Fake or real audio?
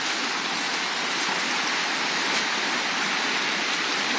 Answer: real